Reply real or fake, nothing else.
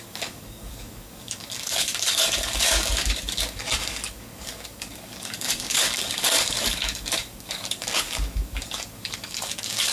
fake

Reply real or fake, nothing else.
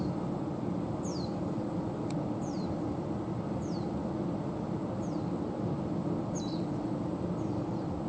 real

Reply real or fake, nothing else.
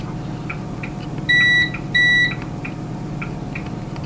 real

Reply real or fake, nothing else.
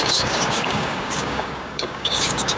fake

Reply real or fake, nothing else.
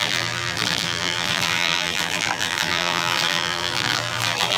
fake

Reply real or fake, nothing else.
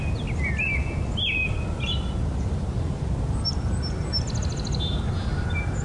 real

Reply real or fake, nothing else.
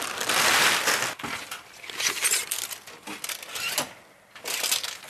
real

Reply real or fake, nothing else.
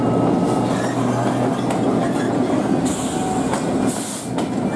real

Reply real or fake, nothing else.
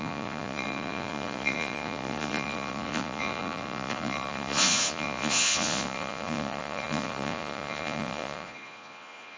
fake